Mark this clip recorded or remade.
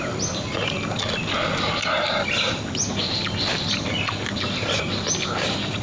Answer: recorded